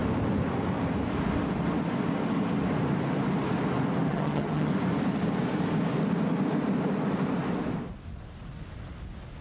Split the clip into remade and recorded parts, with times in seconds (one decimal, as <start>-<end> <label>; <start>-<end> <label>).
0.0-4.1 recorded; 4.1-4.7 remade; 4.7-9.4 recorded